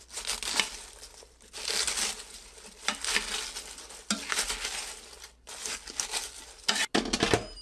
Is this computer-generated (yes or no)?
no